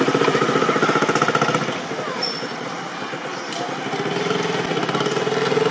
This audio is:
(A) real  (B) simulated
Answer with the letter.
A